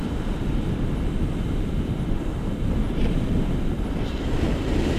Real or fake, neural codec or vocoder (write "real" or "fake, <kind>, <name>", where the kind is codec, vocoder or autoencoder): real